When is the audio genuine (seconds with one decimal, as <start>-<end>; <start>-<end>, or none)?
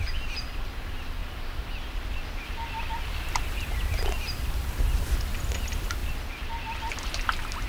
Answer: 0.0-7.7